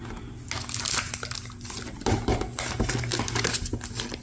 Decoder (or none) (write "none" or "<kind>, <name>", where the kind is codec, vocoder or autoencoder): none